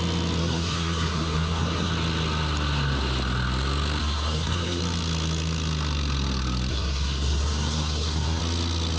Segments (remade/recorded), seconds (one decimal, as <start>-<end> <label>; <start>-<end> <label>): 0.0-0.4 recorded; 0.4-1.9 remade; 1.9-4.0 recorded; 4.0-4.8 remade; 4.8-6.7 recorded; 6.7-8.4 remade; 8.4-9.0 recorded

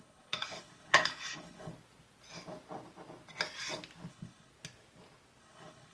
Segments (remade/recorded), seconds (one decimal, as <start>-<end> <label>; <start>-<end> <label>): 0.0-1.7 remade; 1.7-4.1 recorded; 4.1-4.5 remade; 4.5-5.4 recorded; 5.4-5.9 remade

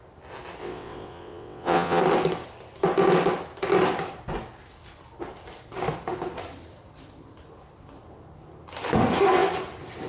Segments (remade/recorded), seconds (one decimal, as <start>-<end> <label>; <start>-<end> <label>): 0.0-0.6 recorded; 0.6-2.0 remade; 2.0-10.1 recorded

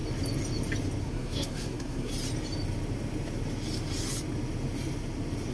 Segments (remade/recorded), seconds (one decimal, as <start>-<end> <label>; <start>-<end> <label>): 0.0-1.0 recorded; 1.0-2.1 remade; 2.1-5.5 recorded

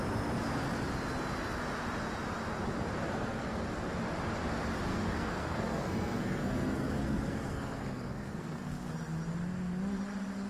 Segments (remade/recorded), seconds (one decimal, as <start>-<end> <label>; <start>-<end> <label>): 0.0-3.0 recorded; 3.0-3.7 remade; 3.7-4.9 recorded; 4.9-8.9 remade; 8.9-10.5 recorded

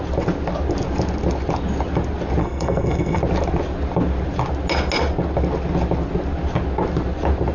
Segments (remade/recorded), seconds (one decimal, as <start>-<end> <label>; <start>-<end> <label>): 0.0-2.4 recorded; 2.4-3.2 remade; 3.2-7.5 recorded